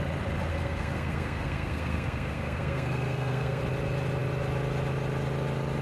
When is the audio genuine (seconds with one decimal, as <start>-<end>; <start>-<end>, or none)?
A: 0.0-0.5; 3.6-5.8